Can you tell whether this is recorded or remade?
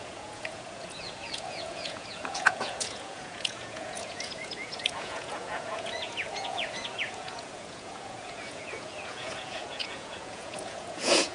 remade